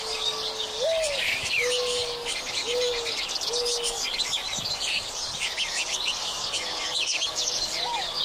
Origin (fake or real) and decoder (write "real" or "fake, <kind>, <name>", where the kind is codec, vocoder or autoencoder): fake, codec, DAC